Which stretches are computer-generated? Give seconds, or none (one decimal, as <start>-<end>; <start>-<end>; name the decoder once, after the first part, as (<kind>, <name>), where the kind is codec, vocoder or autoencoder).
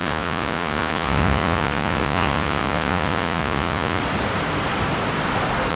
0.0-4.0 (vocoder, Vocos)